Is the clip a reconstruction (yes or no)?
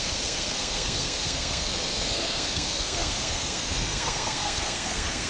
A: yes